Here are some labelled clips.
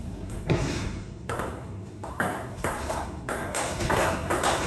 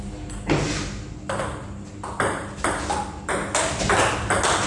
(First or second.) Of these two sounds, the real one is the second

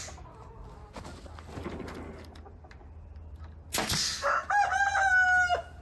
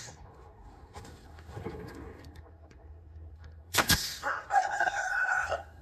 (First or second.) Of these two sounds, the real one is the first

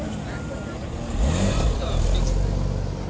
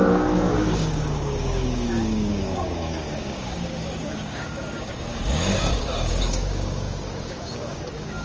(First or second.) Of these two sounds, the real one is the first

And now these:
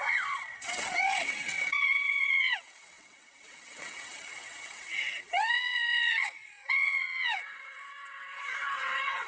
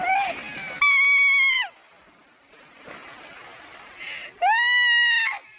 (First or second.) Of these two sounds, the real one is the second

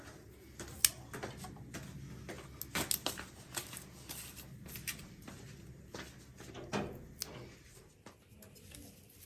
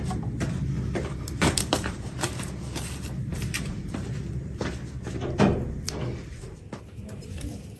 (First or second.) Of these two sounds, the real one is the first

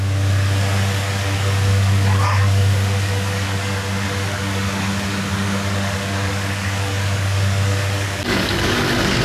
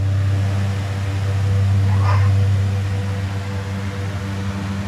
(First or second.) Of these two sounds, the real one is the second